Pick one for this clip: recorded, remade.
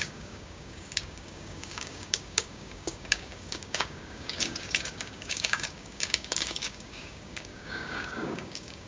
remade